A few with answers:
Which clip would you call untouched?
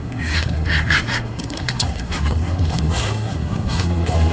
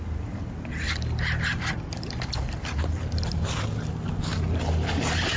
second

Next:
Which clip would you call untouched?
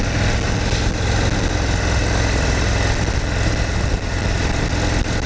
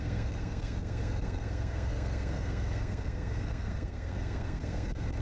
first